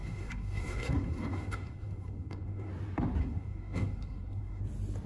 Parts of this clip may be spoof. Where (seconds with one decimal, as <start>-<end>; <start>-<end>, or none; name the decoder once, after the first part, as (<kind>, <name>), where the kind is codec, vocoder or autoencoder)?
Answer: 0.0-2.7 (codec, SNAC); 3.2-4.6